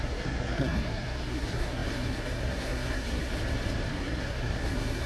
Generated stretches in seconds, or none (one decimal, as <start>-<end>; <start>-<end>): 0.0-3.3; 3.9-5.1

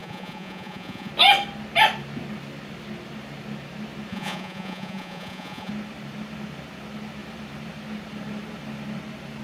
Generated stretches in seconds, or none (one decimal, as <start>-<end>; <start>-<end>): 0.0-1.1; 4.1-5.7

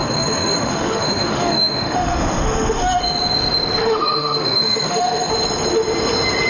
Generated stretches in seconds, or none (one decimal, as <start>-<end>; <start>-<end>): 0.0-3.0; 3.8-5.3

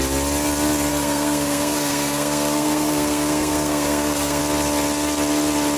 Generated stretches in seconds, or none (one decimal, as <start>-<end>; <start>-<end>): 0.9-4.4

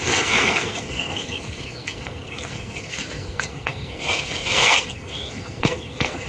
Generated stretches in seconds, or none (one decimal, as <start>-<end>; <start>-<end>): 0.0-6.3

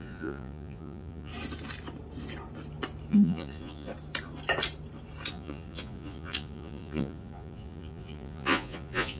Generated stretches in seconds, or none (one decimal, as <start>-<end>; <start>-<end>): 0.0-1.3; 3.1-3.9; 5.3-9.2

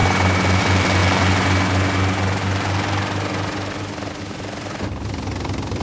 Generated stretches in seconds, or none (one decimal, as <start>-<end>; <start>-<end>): 0.6-1.0; 4.2-5.8